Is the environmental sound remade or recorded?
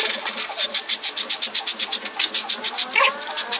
recorded